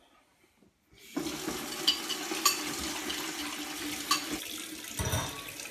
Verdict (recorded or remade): recorded